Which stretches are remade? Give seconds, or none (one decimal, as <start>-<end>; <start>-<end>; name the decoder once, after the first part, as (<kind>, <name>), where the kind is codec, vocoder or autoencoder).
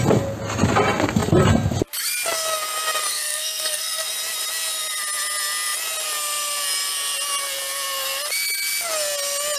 3.1-4.1 (codec, SNAC)